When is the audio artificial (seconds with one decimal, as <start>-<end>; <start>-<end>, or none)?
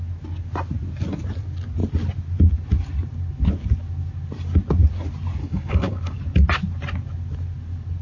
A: 5.4-6.2